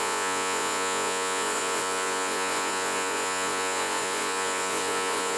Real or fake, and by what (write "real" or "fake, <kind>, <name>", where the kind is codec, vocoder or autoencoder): fake, vocoder, Vocos